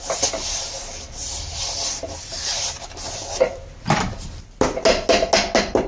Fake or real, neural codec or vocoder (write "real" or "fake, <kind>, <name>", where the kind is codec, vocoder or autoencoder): real